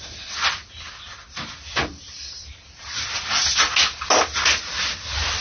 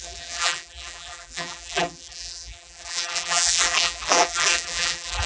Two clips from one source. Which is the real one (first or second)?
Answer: first